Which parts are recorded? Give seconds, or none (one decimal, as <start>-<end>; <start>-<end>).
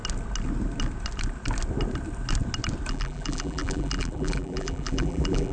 0.0-2.9